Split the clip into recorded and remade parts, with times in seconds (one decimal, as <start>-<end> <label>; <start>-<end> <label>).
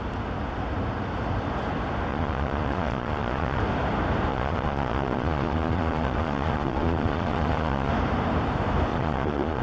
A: 0.0-2.1 recorded; 2.1-3.6 remade; 3.6-4.3 recorded; 4.3-7.9 remade; 7.9-8.9 recorded; 8.9-9.6 remade